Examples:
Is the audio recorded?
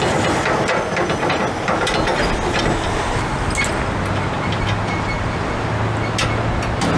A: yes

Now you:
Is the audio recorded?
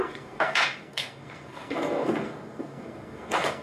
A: no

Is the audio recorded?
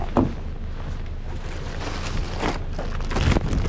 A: yes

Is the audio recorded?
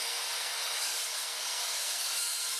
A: no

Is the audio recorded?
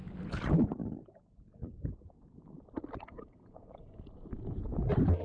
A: yes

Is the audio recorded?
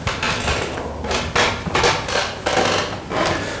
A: yes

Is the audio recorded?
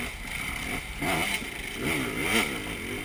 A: yes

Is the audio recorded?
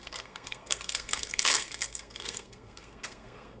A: no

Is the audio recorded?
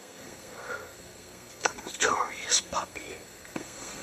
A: no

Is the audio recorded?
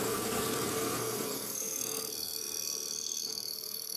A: no